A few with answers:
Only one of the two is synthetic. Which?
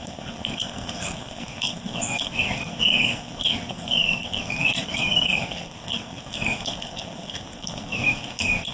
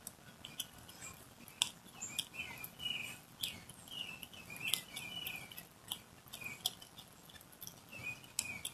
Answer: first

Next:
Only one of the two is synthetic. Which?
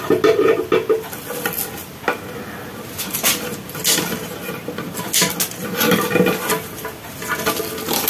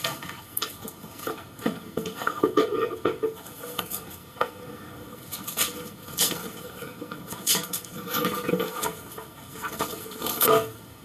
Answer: second